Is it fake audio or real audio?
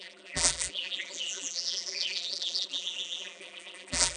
fake